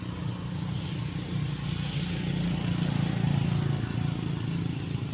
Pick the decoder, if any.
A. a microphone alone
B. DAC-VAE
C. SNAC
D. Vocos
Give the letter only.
A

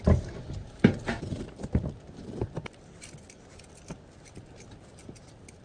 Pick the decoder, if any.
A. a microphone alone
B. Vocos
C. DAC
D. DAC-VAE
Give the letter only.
A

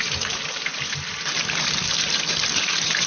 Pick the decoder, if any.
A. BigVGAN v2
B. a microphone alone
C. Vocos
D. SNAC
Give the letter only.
B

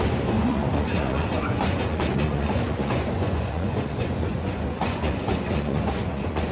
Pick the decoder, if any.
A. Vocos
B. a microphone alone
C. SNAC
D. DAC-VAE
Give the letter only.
A